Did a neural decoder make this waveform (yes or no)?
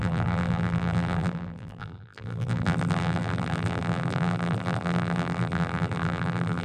yes